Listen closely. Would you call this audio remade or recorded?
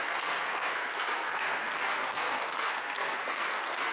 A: remade